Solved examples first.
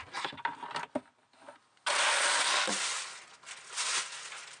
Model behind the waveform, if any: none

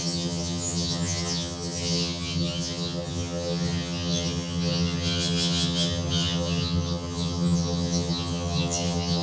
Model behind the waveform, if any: vocoder, HiFi-GAN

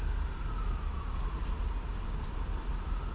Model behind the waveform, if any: none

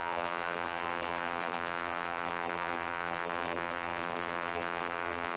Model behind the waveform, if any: vocoder, BigVGAN v2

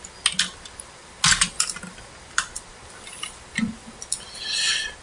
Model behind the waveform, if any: none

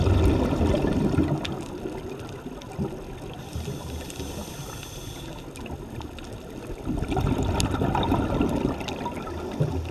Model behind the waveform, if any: none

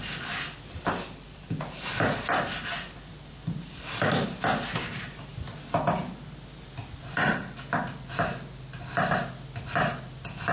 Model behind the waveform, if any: none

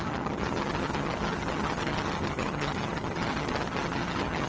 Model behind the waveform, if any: vocoder, HiFi-GAN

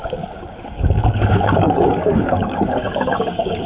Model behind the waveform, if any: codec, DAC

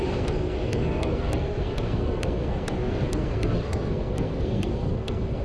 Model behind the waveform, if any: codec, SNAC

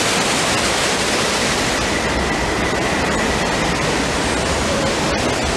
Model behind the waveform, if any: none